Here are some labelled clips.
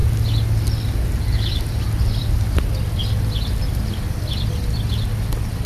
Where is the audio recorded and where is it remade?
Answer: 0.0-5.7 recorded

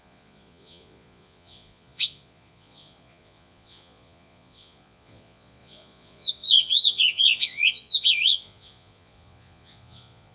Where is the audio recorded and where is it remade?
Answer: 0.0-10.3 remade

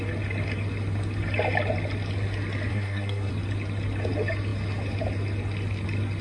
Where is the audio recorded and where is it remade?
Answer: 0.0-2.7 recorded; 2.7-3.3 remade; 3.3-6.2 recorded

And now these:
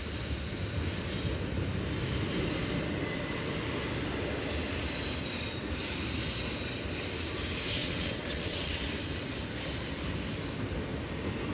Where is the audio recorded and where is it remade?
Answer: 0.0-7.8 recorded; 7.8-8.8 remade; 8.8-11.5 recorded